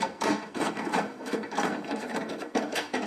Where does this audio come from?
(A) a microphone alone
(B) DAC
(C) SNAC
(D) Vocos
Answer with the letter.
C